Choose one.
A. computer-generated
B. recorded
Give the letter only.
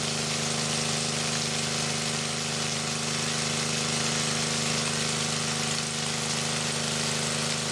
B